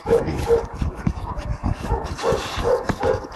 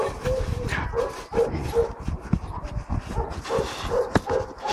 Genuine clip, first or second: second